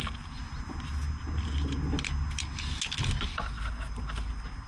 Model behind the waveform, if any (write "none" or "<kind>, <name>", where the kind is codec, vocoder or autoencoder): none